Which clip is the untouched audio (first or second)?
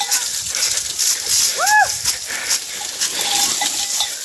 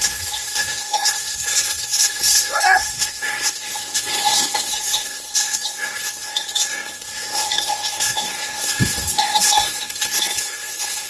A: first